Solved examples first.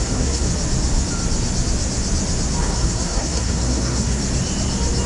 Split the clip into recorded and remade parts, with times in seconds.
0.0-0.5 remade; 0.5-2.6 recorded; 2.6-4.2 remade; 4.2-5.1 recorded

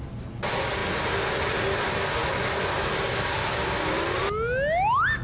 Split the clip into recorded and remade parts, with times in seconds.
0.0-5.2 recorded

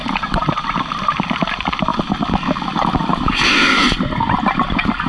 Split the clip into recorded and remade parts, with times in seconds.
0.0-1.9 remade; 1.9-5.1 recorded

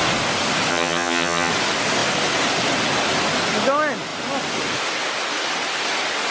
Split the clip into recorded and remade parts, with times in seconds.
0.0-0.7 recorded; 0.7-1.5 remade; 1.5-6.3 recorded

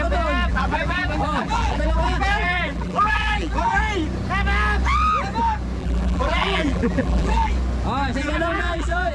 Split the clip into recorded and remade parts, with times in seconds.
0.0-0.5 recorded; 0.5-3.8 remade; 3.8-5.8 recorded; 5.8-7.5 remade; 7.5-8.1 recorded; 8.1-9.1 remade

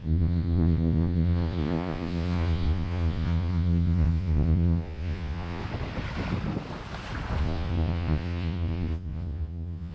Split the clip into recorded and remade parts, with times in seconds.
0.0-5.6 remade; 5.6-7.4 recorded; 7.4-9.9 remade

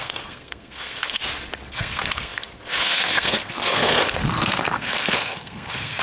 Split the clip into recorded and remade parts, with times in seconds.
0.0-1.2 remade; 1.2-1.7 recorded; 1.7-6.0 remade